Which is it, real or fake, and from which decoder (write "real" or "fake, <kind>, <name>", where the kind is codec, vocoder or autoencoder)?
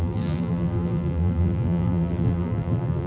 fake, vocoder, BigVGAN v2